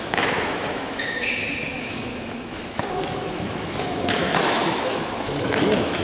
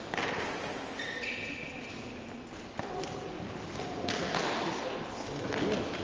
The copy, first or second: first